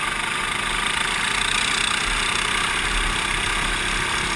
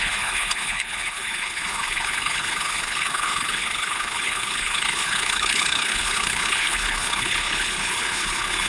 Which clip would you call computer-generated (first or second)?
second